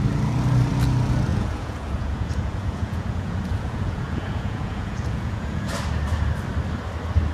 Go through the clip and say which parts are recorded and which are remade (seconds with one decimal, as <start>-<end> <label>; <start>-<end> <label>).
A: 0.0-1.3 recorded; 1.3-5.7 remade; 5.7-7.3 recorded